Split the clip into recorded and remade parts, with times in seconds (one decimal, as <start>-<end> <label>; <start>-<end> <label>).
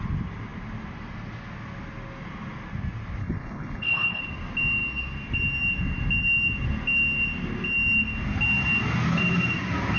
0.0-3.2 recorded; 3.2-4.2 remade; 4.2-10.0 recorded